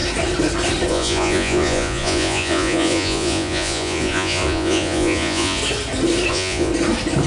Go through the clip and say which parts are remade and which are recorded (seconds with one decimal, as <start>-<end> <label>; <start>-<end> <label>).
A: 0.0-0.9 recorded; 0.9-5.6 remade; 5.6-6.3 recorded; 6.3-6.7 remade; 6.7-7.3 recorded